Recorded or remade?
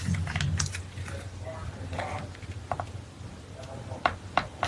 recorded